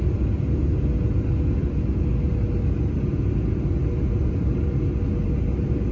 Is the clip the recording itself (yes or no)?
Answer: yes